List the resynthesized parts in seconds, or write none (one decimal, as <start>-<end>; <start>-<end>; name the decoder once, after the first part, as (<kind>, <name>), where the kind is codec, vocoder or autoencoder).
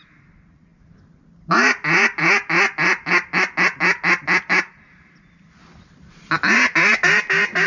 none